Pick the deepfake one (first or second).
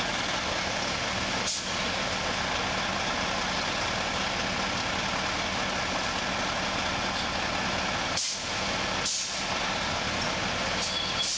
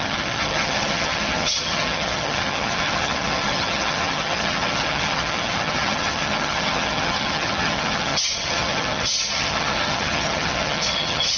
second